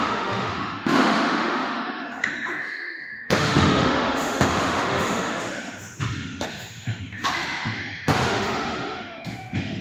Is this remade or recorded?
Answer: remade